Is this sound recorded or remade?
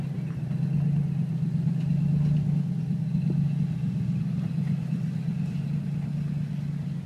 recorded